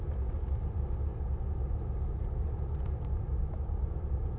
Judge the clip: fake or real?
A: fake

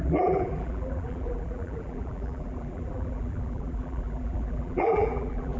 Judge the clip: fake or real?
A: fake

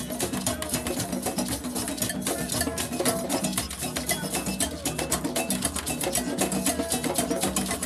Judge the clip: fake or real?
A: real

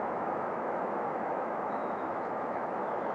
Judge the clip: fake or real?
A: fake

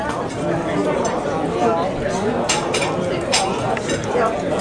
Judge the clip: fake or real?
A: real